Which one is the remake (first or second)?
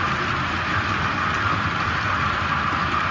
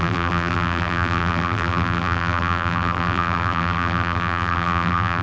second